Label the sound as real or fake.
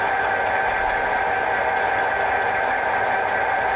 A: real